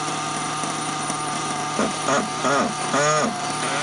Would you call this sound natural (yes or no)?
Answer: yes